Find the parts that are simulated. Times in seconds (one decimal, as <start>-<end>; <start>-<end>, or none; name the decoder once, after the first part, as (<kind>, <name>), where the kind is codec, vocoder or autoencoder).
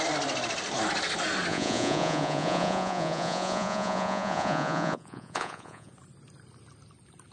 1.5-5.9 (vocoder, Vocos)